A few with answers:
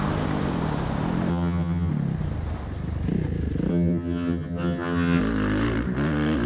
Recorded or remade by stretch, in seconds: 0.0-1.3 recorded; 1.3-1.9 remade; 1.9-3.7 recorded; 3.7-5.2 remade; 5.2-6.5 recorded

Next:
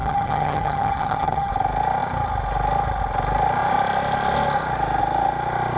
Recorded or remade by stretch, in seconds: 0.0-1.5 remade; 1.5-5.8 recorded

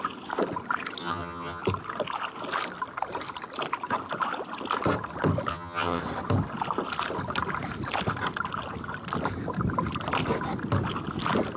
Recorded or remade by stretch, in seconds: 0.0-1.0 recorded; 1.0-1.6 remade; 1.6-5.5 recorded; 5.5-6.0 remade; 6.0-11.6 recorded

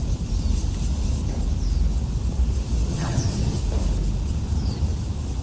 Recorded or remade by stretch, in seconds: 0.0-2.9 recorded; 2.9-3.6 remade; 3.6-5.4 recorded

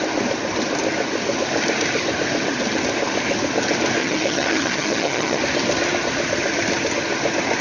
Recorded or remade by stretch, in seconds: 0.0-4.0 recorded; 4.0-5.4 remade; 5.4-7.6 recorded

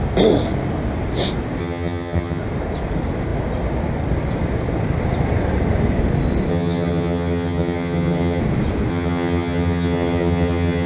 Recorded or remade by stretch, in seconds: 0.0-1.6 recorded; 1.6-2.4 remade; 2.4-6.5 recorded; 6.5-8.4 remade; 8.4-8.9 recorded; 8.9-10.9 remade

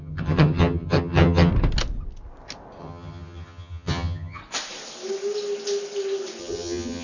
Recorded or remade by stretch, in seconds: 0.0-1.5 remade; 1.5-2.8 recorded; 2.8-4.4 remade; 4.4-6.4 recorded; 6.4-7.0 remade

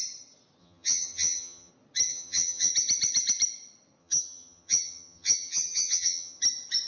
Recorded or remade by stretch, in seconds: 0.0-0.6 recorded; 0.6-1.7 remade; 1.7-2.1 recorded; 2.1-2.7 remade; 2.7-4.0 recorded; 4.0-6.4 remade; 6.4-6.9 recorded